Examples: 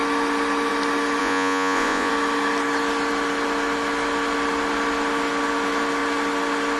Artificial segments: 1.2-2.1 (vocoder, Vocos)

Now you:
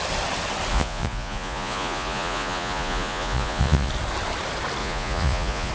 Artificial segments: 0.7-3.9 (vocoder, Vocos); 4.8-5.7